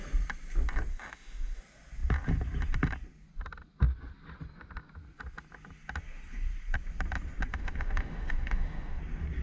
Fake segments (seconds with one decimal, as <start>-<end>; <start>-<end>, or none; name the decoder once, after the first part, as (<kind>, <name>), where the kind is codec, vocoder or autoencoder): 0.9-1.6 (autoencoder, DAC-VAE); 7.5-9.0